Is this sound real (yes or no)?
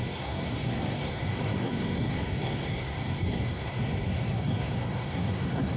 no